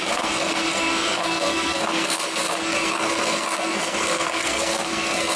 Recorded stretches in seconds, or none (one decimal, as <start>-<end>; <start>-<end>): none